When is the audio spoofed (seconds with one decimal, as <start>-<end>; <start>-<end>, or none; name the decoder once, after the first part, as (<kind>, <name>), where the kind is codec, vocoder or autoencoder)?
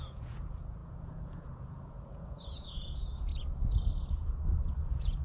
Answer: 0.0-5.2 (vocoder, Vocos)